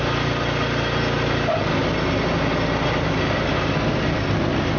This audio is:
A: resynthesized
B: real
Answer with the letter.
B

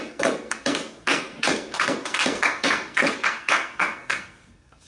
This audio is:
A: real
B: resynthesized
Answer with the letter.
B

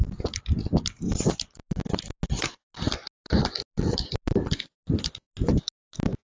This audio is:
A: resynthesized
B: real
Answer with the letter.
B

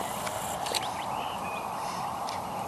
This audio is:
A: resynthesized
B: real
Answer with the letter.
B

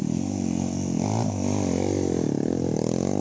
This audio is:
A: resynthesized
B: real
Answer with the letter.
B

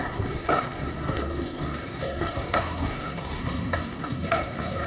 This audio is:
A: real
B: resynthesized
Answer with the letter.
B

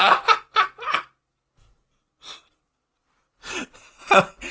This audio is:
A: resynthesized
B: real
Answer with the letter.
B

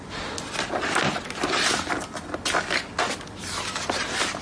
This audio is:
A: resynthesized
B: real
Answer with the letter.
B